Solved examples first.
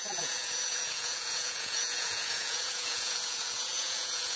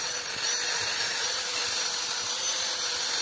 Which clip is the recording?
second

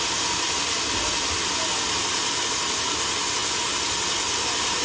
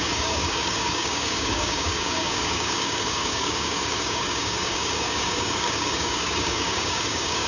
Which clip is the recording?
first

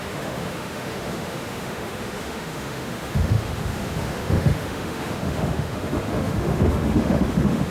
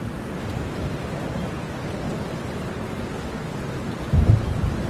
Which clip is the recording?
second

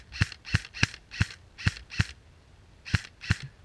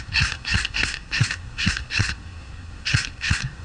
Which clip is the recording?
first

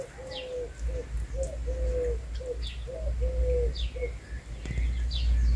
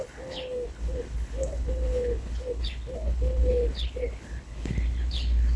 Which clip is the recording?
first